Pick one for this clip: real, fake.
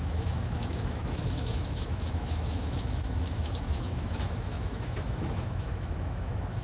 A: fake